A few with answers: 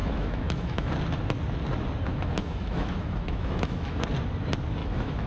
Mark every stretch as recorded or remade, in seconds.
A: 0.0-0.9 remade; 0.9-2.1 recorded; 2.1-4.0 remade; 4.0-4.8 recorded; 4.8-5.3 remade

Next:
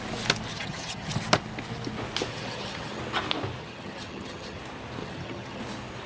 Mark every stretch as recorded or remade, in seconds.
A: 0.0-0.5 recorded; 0.5-1.1 remade; 1.1-2.3 recorded; 2.3-3.0 remade; 3.0-3.6 recorded; 3.6-4.6 remade; 4.6-5.0 recorded; 5.0-5.6 remade; 5.6-6.1 recorded

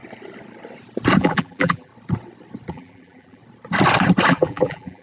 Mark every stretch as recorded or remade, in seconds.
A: 0.0-1.2 recorded; 1.2-1.9 remade; 1.9-2.7 recorded; 2.7-3.4 remade; 3.4-4.3 recorded; 4.3-5.0 remade

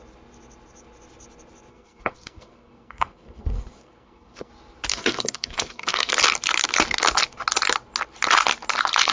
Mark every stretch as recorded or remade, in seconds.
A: 0.0-1.7 recorded; 1.7-4.5 remade; 4.5-4.9 recorded; 4.9-6.1 remade; 6.1-9.1 recorded